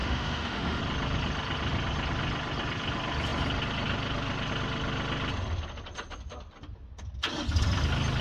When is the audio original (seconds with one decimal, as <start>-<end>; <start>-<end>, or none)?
0.8-8.2